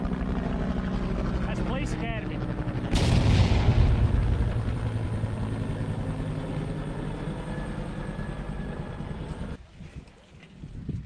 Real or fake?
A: real